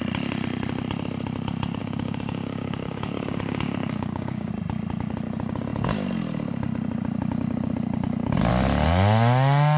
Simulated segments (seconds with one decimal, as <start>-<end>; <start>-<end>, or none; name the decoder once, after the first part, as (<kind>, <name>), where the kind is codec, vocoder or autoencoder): 1.8-4.5 (codec, DAC)

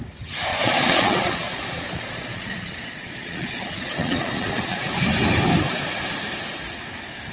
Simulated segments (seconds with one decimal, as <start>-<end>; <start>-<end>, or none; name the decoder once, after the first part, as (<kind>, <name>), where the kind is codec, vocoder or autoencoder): 0.5-4.9 (vocoder, Vocos)

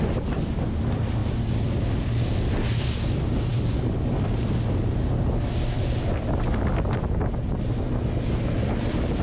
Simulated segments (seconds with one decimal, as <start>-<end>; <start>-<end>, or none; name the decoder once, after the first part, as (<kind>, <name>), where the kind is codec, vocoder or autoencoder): none

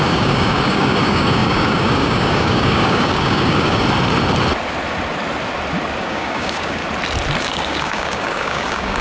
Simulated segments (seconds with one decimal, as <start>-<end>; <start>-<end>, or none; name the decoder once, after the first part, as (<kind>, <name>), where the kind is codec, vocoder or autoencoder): 0.0-3.8 (codec, DAC); 6.0-6.8; 7.4-9.0

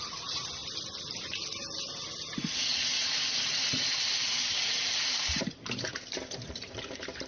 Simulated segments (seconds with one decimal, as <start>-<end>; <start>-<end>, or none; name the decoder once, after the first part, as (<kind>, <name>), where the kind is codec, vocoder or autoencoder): 0.0-0.6 (vocoder, BigVGAN v2); 1.8-7.3

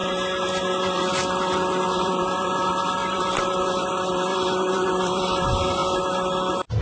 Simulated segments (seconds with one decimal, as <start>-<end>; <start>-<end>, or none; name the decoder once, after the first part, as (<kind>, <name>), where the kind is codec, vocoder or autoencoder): 0.0-5.8 (vocoder, BigVGAN v2)

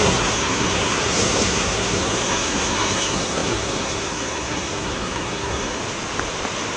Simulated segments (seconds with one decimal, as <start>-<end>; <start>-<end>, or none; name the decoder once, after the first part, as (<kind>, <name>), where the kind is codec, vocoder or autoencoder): 0.0-5.8 (codec, SNAC)